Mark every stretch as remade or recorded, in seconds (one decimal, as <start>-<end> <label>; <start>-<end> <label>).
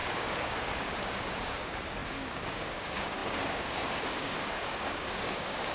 0.0-5.7 remade